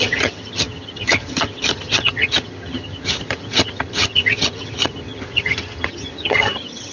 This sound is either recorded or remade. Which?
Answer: remade